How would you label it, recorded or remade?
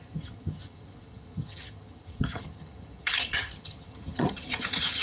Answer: remade